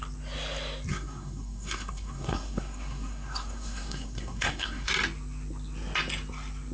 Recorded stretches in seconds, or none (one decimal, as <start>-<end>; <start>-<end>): 0.0-0.9; 4.9-6.7